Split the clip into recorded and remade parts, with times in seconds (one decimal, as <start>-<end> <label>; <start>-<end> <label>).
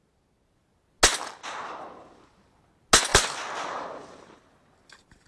0.0-3.1 recorded; 3.1-4.3 remade; 4.3-5.3 recorded